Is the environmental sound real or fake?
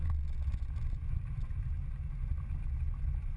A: fake